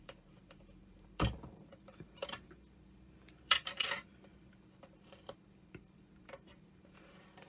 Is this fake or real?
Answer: fake